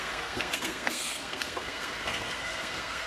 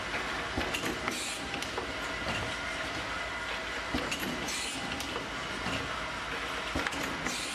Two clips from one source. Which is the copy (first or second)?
first